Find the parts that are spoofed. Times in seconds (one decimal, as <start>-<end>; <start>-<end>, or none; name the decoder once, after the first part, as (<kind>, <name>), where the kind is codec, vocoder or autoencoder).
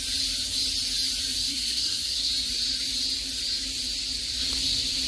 1.5-2.3 (codec, SNAC)